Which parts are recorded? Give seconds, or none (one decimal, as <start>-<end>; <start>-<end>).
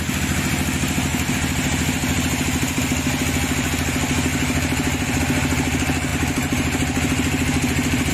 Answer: 0.0-1.1; 2.8-4.3; 5.2-6.1